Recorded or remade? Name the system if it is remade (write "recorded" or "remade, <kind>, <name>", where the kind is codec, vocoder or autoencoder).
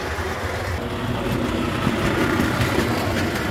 recorded